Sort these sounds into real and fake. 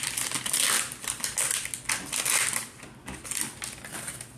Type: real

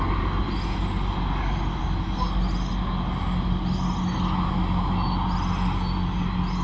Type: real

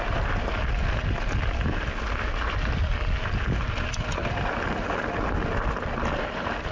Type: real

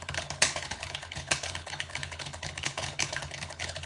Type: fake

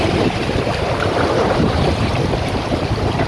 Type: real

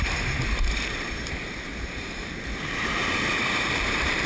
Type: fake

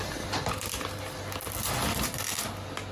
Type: real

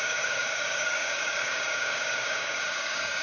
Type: fake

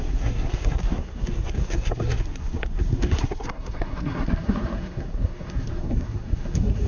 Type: fake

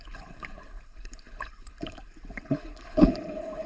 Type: fake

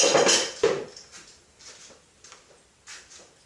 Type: real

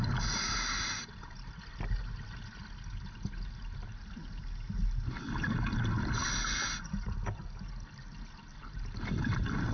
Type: real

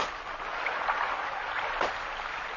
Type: real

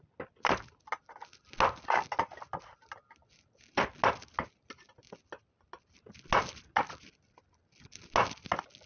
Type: real